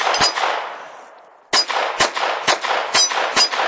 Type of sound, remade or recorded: recorded